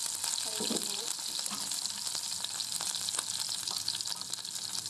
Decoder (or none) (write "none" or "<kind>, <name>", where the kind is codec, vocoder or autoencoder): none